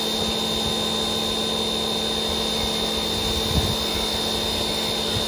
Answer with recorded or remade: recorded